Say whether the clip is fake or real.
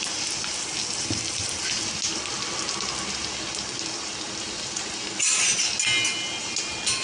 real